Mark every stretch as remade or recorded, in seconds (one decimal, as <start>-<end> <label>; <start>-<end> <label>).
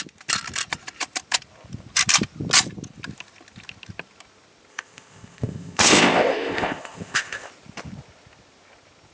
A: 0.0-4.7 recorded; 4.7-7.5 remade; 7.5-9.1 recorded